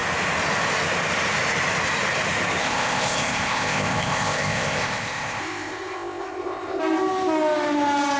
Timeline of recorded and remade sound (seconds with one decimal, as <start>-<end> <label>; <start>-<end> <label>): 0.0-2.6 recorded; 2.6-6.8 remade; 6.8-8.2 recorded